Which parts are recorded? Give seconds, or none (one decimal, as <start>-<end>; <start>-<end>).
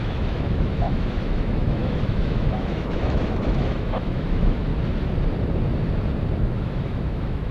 4.7-6.4